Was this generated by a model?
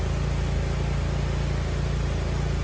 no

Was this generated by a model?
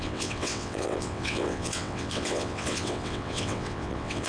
yes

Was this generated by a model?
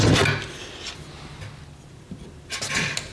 no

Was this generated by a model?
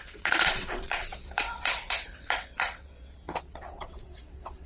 yes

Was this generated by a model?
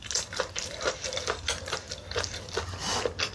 no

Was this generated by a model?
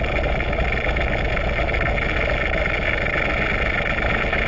no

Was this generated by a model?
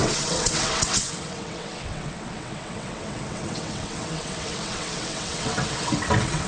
yes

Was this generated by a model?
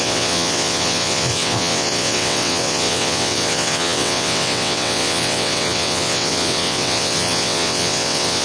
yes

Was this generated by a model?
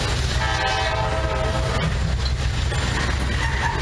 no